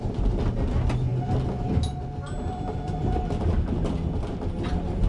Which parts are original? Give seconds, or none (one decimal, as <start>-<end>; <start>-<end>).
0.0-5.1